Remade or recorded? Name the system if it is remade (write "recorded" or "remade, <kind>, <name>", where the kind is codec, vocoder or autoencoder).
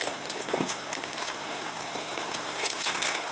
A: remade, codec, SNAC